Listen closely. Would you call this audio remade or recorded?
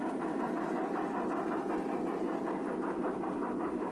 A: recorded